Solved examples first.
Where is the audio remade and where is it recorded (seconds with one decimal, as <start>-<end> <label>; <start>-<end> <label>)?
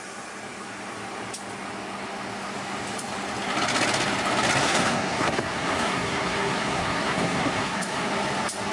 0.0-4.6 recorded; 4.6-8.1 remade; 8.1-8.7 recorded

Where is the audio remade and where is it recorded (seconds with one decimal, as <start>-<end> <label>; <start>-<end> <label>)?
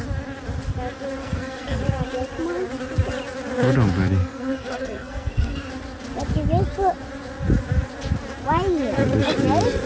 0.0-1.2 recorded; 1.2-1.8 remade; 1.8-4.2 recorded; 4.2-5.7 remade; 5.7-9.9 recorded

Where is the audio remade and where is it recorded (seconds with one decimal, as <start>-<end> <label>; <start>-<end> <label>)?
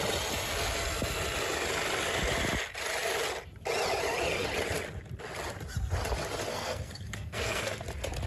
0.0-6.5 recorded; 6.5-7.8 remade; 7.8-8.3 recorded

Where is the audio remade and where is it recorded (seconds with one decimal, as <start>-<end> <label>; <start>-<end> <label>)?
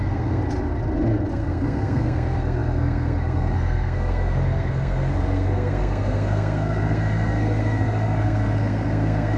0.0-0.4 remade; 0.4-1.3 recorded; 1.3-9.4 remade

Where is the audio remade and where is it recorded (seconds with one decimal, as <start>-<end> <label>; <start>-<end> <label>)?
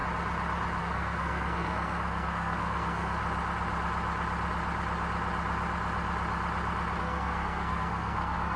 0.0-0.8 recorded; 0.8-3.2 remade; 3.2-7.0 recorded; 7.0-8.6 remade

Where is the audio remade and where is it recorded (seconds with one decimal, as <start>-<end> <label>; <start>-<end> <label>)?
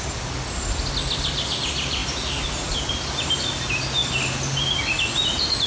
0.0-5.7 recorded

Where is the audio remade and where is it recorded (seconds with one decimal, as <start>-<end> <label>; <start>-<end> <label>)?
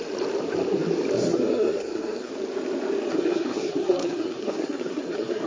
0.0-1.3 recorded; 1.3-2.3 remade; 2.3-3.1 recorded; 3.1-5.5 remade